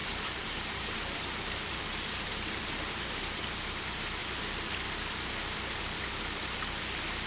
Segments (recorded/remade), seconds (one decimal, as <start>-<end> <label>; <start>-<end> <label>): 0.0-2.6 remade; 2.6-7.3 recorded